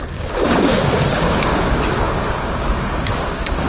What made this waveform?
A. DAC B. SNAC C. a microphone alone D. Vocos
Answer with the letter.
A